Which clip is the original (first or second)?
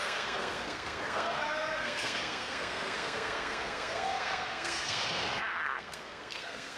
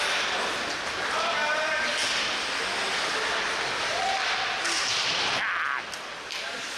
second